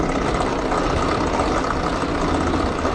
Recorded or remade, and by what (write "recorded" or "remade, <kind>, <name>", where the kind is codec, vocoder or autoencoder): recorded